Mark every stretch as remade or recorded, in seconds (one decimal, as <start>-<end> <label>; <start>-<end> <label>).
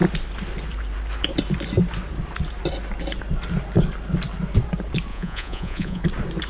0.0-5.1 recorded; 5.1-6.0 remade; 6.0-6.5 recorded